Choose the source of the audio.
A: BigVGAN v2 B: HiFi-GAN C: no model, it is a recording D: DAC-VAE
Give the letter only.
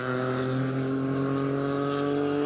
C